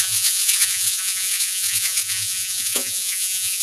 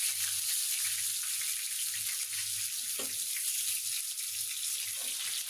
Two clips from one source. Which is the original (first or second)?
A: second